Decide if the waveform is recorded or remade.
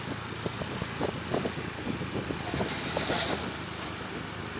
recorded